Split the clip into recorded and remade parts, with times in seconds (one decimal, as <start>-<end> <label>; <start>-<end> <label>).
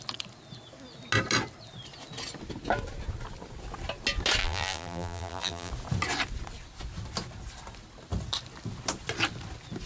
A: 0.0-4.4 recorded; 4.4-5.7 remade; 5.7-9.8 recorded